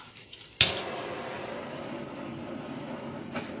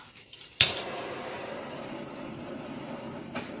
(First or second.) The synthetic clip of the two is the second